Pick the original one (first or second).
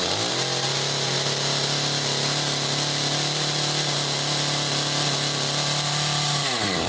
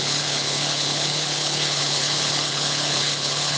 first